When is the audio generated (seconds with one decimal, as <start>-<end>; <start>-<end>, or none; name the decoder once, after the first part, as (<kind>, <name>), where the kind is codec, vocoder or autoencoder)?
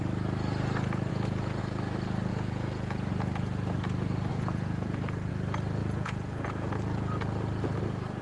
1.1-1.6 (vocoder, Vocos); 2.3-3.1; 4.3-5.3; 5.8-6.7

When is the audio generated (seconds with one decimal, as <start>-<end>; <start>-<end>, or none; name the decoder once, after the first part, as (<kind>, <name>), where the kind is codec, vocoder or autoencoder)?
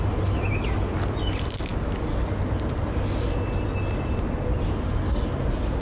none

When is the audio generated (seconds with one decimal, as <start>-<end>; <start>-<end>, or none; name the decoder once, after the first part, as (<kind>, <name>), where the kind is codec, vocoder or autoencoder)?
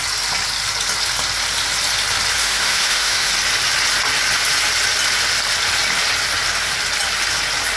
2.4-3.3 (autoencoder, DAC-VAE)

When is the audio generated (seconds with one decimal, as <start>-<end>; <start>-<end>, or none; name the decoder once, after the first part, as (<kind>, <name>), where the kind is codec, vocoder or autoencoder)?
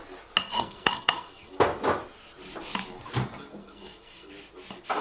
0.4-1.5 (codec, SNAC); 3.6-4.3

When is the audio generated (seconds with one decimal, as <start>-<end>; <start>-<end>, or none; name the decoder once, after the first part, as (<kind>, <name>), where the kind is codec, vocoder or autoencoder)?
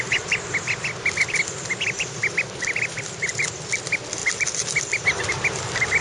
2.2-3.4 (vocoder, BigVGAN v2); 4.2-5.2